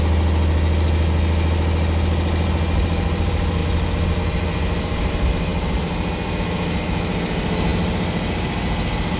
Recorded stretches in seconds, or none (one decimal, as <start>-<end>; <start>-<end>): 0.0-9.2